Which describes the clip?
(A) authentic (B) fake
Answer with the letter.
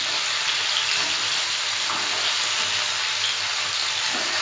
A